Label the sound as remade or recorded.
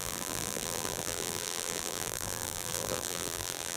remade